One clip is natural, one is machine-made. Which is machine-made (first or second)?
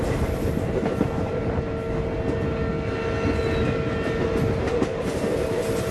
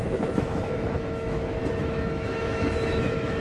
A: second